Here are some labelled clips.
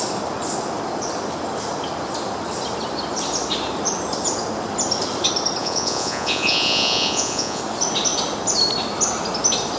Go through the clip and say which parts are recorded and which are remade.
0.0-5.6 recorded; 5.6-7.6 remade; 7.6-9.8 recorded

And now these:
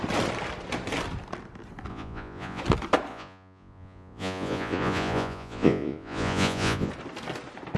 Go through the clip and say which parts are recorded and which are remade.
0.0-1.9 recorded; 1.9-2.6 remade; 2.6-3.1 recorded; 3.1-6.9 remade; 6.9-7.8 recorded

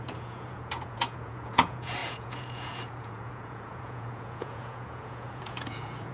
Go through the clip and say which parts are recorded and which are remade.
0.0-6.1 remade

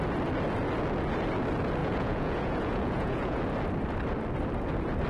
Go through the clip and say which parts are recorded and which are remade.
0.0-1.8 recorded; 1.8-3.4 remade; 3.4-5.1 recorded

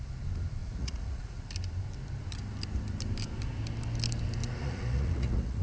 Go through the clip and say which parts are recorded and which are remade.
0.0-0.6 recorded; 0.6-1.4 remade; 1.4-4.6 recorded; 4.6-5.6 remade